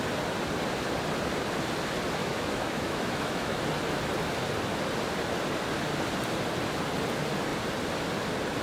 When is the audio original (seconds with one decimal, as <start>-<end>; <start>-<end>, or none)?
0.0-2.2; 3.6-8.6